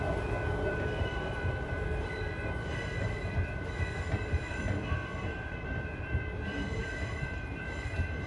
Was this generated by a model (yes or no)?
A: yes